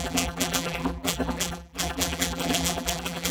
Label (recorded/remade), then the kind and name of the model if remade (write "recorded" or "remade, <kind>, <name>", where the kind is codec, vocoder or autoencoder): remade, vocoder, BigVGAN v2